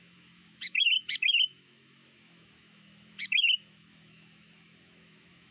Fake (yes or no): yes